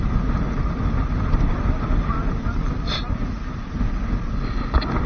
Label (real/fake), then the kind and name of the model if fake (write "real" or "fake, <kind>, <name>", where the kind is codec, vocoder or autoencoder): real